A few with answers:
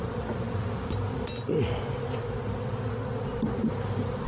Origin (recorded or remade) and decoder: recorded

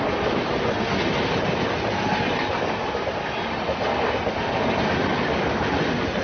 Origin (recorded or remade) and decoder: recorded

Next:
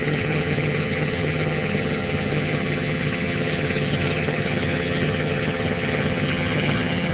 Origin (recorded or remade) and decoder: remade, vocoder, HiFi-GAN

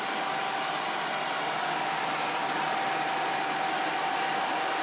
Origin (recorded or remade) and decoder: recorded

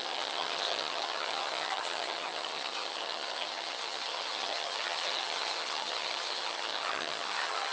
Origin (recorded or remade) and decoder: remade, vocoder, HiFi-GAN